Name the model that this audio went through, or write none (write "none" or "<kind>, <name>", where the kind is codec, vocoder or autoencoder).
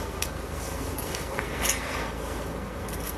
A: codec, SNAC